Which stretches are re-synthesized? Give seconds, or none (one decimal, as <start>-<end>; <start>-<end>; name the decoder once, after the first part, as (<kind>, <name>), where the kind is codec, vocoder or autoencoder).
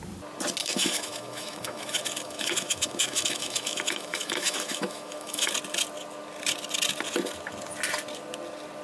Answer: 0.6-5.5 (autoencoder, DAC-VAE)